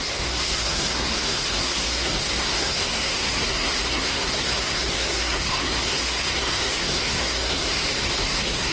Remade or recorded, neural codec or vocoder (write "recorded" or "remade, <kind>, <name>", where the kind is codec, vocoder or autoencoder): remade, codec, SNAC